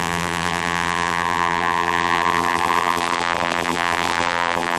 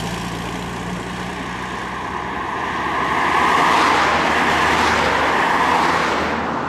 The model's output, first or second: first